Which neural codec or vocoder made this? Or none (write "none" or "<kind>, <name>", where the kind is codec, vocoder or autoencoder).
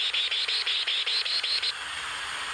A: none